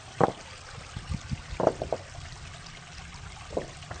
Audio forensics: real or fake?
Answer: real